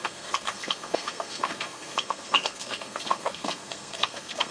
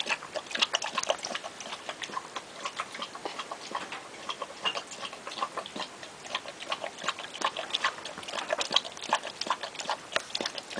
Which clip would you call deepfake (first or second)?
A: first